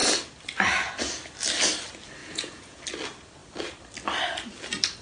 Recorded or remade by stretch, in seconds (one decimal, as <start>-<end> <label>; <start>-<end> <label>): 0.0-2.2 recorded; 2.2-2.8 remade; 2.8-5.0 recorded

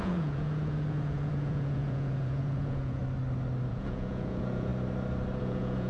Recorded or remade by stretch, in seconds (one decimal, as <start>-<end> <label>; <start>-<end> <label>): 0.0-3.0 remade; 3.0-3.7 recorded; 3.7-4.7 remade; 4.7-5.4 recorded; 5.4-5.9 remade

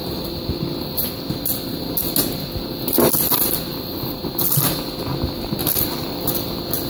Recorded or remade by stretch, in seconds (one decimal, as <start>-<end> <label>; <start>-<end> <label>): 0.0-6.9 recorded

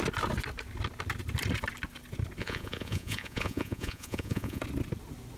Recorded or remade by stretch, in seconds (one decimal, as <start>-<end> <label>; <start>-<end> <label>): 0.0-2.4 recorded; 2.4-4.6 remade; 4.6-5.4 recorded

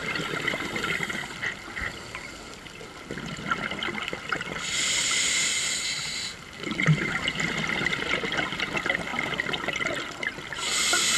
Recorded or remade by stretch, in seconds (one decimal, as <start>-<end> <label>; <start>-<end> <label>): 0.0-11.2 recorded